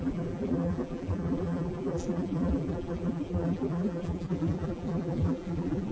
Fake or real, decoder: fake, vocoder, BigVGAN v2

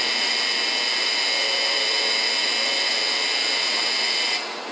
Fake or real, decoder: fake, vocoder, WaveNeXt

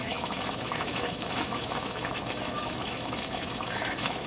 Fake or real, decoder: fake, autoencoder, DAC-VAE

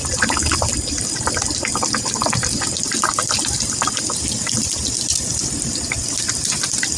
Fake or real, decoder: real